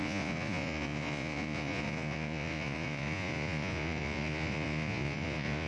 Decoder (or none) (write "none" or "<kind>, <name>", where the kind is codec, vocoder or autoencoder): vocoder, Vocos